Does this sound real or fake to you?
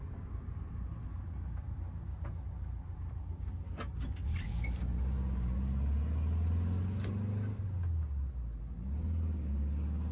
real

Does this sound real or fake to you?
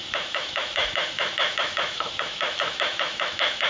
fake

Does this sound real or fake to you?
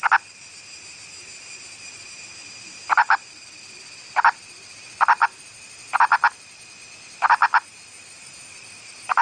real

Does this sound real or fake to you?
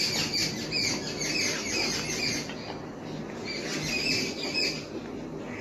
real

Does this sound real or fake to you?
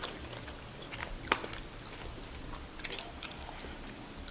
real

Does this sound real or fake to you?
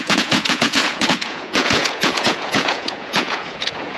fake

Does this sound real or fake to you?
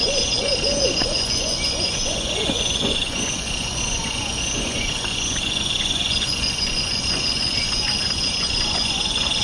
fake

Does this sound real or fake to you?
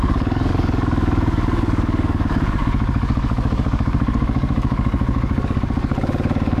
fake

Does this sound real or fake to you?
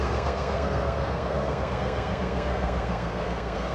fake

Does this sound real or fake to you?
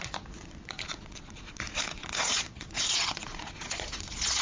fake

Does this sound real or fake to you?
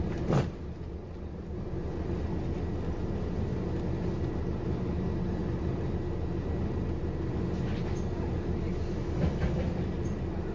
real